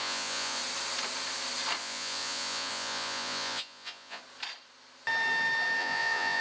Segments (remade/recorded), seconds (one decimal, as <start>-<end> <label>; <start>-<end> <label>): 0.0-0.6 remade; 0.6-1.8 recorded; 1.8-4.2 remade; 4.2-5.8 recorded; 5.8-6.4 remade